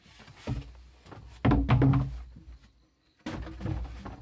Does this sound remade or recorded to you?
recorded